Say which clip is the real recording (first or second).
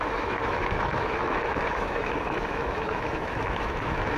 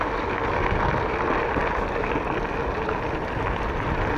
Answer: second